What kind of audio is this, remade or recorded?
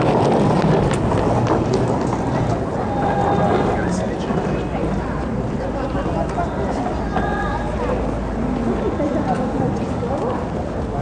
recorded